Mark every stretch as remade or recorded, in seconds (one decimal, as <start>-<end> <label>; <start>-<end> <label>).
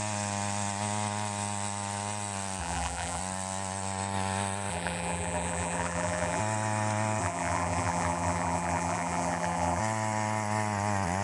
0.0-2.6 recorded; 2.6-3.2 remade; 3.2-4.7 recorded; 4.7-6.4 remade; 6.4-7.2 recorded; 7.2-9.8 remade; 9.8-11.2 recorded